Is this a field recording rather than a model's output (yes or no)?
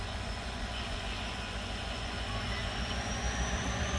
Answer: no